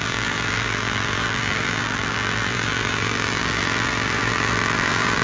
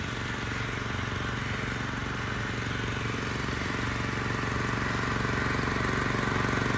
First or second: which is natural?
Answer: second